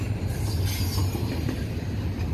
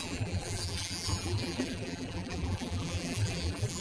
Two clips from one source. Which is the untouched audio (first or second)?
first